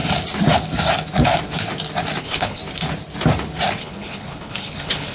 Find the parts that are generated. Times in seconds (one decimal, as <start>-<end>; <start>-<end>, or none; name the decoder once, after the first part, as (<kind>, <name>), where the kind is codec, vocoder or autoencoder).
2.2-2.6 (codec, HILCodec); 3.8-5.1